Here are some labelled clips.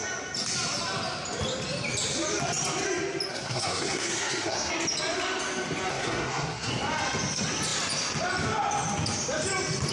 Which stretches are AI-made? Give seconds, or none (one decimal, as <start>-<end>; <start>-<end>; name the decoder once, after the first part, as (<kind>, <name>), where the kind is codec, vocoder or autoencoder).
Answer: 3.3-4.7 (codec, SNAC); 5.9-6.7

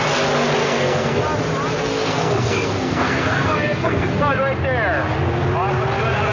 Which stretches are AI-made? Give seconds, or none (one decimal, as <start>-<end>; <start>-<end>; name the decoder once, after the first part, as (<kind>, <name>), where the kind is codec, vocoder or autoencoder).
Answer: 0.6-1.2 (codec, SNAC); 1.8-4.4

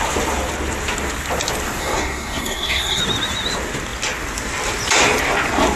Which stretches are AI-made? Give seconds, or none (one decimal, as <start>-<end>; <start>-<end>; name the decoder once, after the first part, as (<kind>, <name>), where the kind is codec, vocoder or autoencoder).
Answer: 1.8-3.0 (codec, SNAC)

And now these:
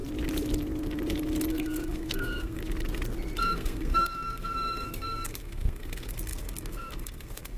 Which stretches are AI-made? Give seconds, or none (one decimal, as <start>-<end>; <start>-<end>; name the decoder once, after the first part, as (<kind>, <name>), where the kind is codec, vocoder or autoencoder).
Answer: 1.5-2.6 (codec, SNAC); 3.4-7.6